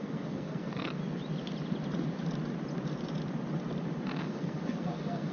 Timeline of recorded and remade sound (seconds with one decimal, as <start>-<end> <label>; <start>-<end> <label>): 0.0-1.0 remade; 1.0-4.2 recorded; 4.2-5.3 remade

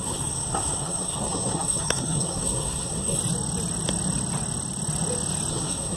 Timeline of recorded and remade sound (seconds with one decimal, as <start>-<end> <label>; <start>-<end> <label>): 0.0-3.2 remade; 3.2-5.5 recorded; 5.5-6.0 remade

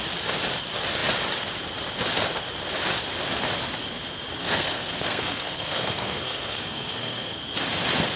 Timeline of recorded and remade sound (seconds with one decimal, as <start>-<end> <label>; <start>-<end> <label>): 0.0-4.4 recorded; 4.4-7.3 remade; 7.3-8.2 recorded

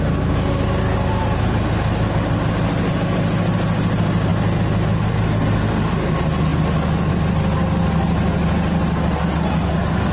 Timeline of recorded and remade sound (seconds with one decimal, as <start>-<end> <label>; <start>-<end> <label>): 0.0-10.1 recorded

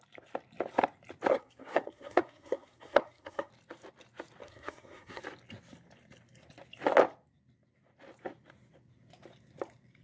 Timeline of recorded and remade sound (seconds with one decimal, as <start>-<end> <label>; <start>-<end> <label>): 0.0-1.3 recorded; 1.3-3.5 remade; 3.5-4.4 recorded; 4.4-5.2 remade; 5.2-10.0 recorded

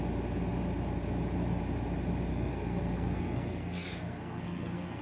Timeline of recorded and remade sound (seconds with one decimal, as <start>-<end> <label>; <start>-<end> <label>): 0.0-2.3 recorded; 2.3-5.0 remade

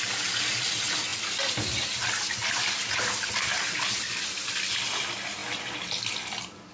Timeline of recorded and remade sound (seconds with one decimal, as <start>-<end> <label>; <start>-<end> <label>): 0.0-6.7 recorded